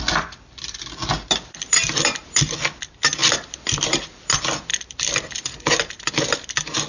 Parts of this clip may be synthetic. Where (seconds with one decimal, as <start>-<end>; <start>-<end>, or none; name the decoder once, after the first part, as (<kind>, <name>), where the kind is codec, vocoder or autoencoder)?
none